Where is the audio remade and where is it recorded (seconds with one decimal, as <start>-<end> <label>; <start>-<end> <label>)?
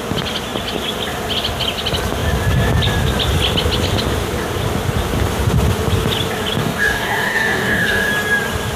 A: 0.0-6.6 recorded; 6.6-8.1 remade; 8.1-8.8 recorded